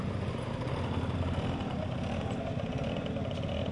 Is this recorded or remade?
recorded